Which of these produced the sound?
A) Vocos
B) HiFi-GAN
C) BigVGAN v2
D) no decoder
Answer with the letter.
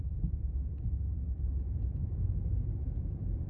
C